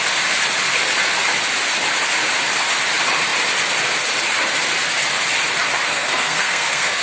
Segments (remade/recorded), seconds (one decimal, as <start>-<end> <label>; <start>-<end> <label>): 0.0-5.9 recorded; 5.9-7.0 remade